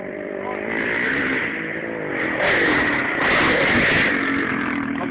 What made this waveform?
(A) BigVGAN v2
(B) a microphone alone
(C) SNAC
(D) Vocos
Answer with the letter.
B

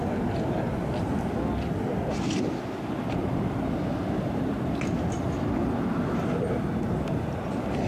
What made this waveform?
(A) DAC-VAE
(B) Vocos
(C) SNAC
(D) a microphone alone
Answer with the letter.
D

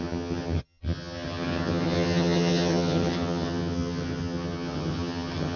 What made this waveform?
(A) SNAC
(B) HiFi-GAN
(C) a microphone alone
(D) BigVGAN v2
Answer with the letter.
B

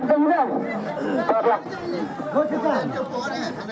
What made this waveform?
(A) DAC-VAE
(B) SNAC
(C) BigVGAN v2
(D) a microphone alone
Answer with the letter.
D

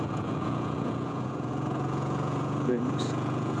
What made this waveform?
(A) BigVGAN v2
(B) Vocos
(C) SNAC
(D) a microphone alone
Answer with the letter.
B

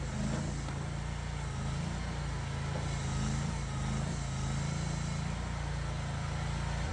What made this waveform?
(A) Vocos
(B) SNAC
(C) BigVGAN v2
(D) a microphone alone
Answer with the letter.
D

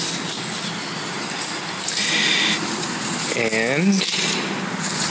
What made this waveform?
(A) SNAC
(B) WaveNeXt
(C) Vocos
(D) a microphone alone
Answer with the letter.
D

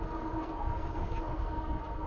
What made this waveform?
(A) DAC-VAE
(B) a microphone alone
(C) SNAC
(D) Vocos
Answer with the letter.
C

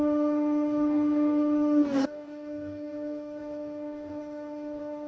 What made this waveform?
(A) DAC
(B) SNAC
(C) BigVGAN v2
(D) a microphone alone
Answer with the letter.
A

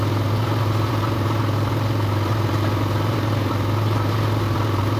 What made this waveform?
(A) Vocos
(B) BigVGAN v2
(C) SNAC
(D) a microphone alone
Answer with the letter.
B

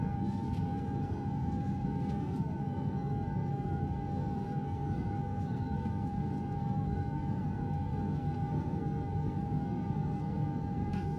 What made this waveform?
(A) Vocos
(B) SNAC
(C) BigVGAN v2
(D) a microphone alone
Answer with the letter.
B